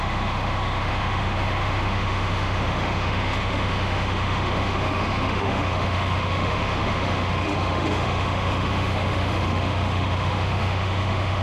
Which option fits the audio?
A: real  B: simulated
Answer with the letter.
B